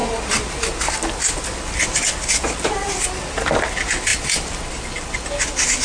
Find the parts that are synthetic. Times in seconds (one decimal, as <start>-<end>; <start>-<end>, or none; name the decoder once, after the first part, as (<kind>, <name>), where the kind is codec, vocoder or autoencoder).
none